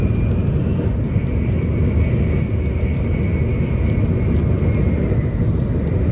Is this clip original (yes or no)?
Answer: yes